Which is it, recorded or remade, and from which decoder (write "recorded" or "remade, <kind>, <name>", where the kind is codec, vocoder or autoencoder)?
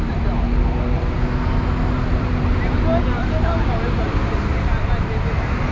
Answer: recorded